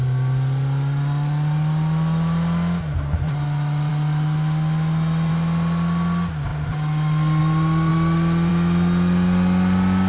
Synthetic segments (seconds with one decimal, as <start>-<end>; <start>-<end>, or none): none